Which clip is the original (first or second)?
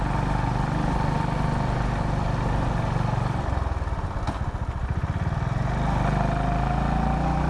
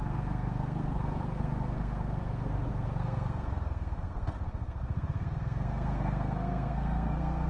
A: first